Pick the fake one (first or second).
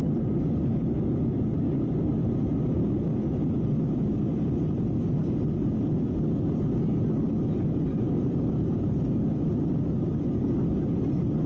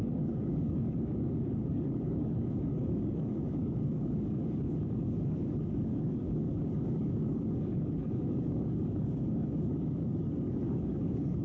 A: second